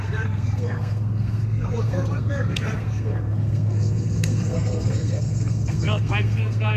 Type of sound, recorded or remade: remade